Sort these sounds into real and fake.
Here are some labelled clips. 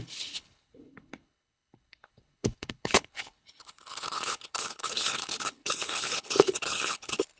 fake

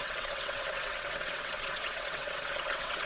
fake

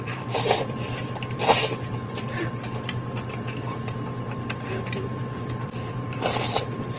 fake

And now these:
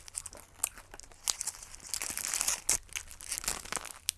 real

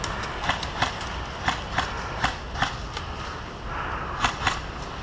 real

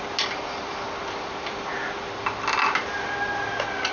real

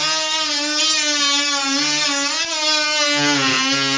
real